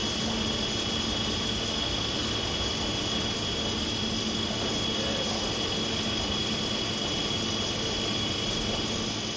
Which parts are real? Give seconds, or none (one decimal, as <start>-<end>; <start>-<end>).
0.0-9.4